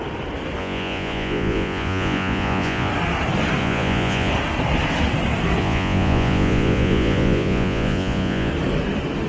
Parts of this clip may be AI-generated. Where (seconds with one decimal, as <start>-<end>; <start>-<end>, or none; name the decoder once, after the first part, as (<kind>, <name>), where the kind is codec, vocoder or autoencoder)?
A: 0.6-2.9 (vocoder, Vocos); 3.6-4.3; 5.6-8.5